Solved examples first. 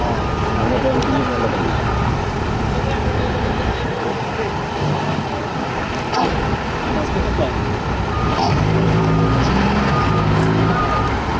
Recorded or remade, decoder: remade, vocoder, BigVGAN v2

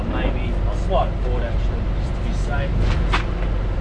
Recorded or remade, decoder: recorded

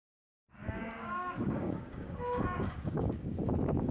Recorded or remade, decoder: remade, codec, DAC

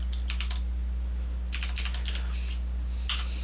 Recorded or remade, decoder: recorded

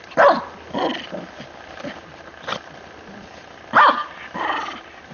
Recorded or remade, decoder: recorded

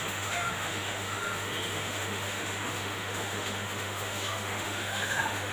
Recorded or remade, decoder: remade, autoencoder, DAC-VAE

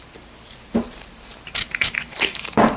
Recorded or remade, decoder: remade, vocoder, BigVGAN v2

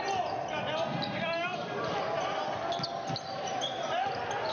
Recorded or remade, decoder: recorded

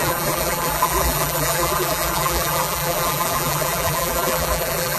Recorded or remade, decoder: remade, vocoder, BigVGAN v2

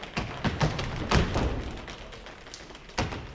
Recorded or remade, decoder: recorded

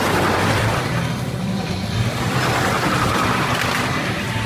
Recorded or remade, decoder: remade, vocoder, BigVGAN v2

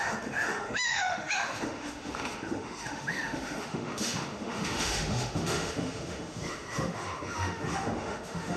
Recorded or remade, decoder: remade, autoencoder, DAC-VAE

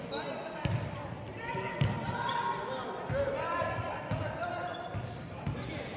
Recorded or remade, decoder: recorded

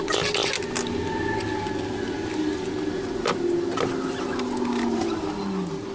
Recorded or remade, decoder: recorded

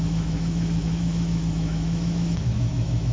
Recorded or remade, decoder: remade, autoencoder, DAC-VAE